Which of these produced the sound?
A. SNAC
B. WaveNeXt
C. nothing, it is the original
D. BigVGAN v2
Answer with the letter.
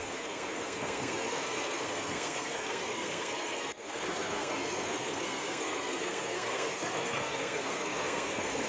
A